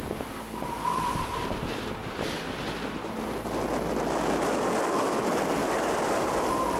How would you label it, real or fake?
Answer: real